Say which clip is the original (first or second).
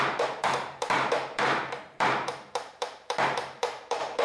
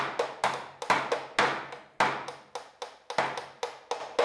second